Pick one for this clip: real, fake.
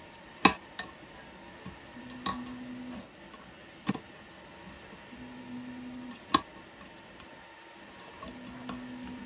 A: real